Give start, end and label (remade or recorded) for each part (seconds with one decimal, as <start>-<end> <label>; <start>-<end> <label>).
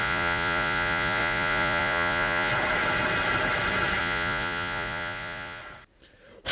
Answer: 0.0-2.5 remade; 2.5-4.0 recorded; 4.0-5.6 remade; 5.6-6.5 recorded